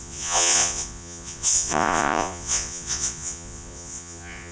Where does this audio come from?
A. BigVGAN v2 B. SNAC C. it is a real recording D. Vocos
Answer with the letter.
D